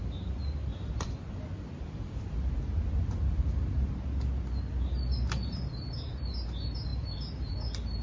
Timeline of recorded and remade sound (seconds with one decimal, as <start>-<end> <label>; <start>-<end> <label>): 0.0-0.7 recorded; 0.7-1.2 remade; 1.2-8.0 recorded